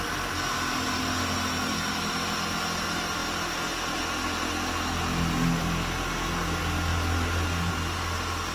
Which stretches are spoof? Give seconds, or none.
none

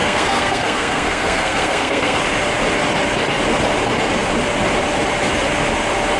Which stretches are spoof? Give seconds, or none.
0.0-2.2 (codec, SNAC)